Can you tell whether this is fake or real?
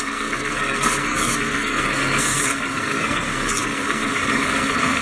fake